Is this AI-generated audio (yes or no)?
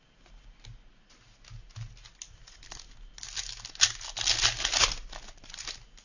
no